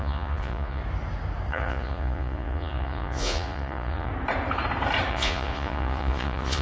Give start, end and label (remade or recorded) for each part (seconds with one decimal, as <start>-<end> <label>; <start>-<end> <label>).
0.0-0.8 remade; 0.8-1.5 recorded; 1.5-4.1 remade; 4.1-5.1 recorded; 5.1-6.6 remade